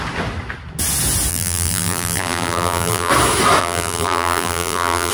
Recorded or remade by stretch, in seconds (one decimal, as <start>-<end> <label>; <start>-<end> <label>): 0.0-1.3 recorded; 1.3-3.1 remade; 3.1-3.6 recorded; 3.6-5.1 remade